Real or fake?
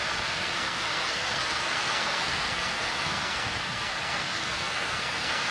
fake